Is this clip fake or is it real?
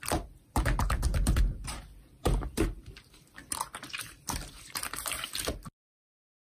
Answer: fake